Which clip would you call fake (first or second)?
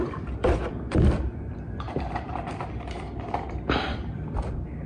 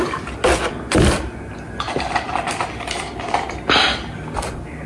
first